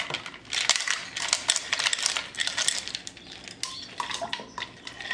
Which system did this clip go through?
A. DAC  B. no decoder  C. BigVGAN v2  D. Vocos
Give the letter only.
B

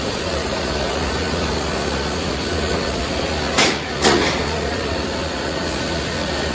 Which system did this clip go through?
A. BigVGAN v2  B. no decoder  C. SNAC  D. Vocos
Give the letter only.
D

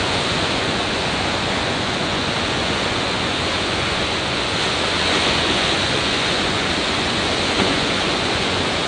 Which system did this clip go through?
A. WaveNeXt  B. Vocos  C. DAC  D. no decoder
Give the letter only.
B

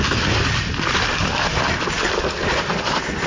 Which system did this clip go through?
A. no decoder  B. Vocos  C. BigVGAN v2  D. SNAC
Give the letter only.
A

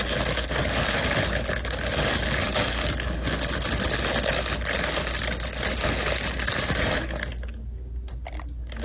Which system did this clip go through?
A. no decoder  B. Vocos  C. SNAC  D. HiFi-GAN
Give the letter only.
A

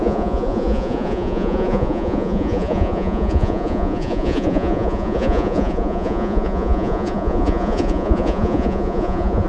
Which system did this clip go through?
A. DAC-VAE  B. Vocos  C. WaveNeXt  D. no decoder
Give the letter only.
B